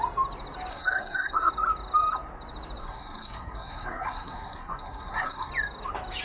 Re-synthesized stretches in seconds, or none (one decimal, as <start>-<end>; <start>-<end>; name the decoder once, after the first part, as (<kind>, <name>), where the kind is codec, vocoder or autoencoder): 0.7-1.5 (codec, SNAC); 2.8-5.5